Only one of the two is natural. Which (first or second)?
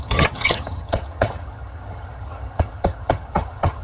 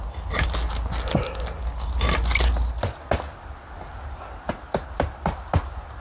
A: second